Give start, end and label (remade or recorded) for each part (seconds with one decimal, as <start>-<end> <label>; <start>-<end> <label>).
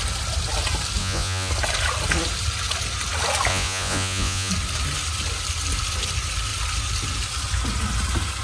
0.0-1.0 recorded; 1.0-1.5 remade; 1.5-3.5 recorded; 3.5-4.5 remade; 4.5-8.4 recorded